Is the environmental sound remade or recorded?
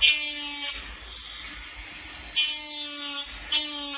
recorded